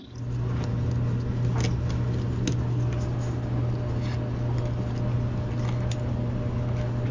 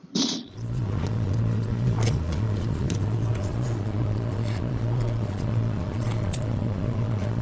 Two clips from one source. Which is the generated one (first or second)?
second